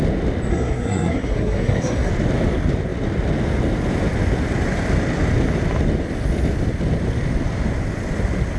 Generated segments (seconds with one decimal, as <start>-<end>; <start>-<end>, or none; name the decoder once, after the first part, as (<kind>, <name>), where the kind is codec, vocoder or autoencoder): 0.5-2.1 (codec, SNAC)